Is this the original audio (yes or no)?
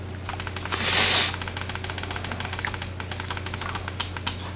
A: yes